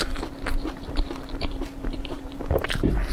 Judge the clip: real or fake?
fake